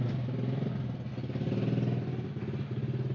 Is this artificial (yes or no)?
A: no